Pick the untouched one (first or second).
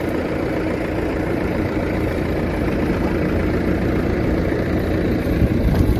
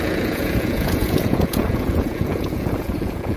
first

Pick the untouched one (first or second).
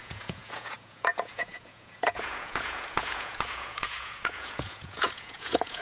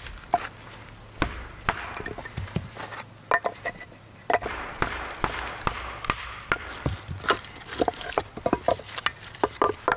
second